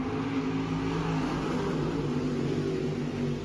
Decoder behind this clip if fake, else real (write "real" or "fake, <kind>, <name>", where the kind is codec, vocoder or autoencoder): real